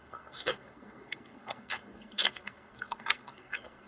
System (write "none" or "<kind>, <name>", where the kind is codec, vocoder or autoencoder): codec, SNAC